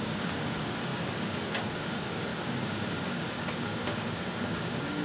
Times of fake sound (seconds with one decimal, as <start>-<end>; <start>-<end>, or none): 0.0-5.0